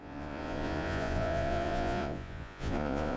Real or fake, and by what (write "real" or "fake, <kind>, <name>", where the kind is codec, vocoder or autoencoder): fake, vocoder, Vocos